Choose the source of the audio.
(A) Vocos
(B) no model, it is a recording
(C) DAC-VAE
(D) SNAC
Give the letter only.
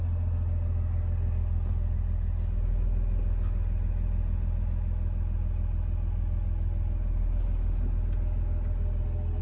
B